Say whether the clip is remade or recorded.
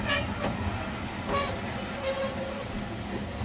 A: recorded